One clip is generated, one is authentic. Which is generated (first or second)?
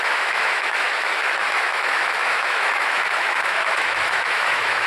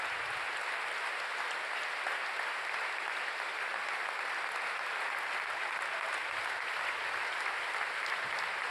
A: first